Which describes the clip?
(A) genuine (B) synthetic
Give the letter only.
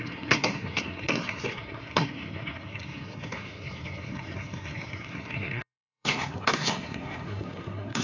B